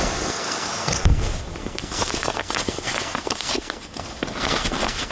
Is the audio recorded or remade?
remade